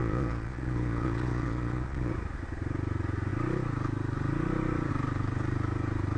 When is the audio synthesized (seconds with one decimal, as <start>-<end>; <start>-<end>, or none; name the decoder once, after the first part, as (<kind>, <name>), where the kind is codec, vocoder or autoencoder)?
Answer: 0.0-2.1 (vocoder, Vocos)